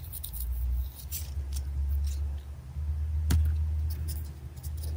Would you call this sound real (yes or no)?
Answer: yes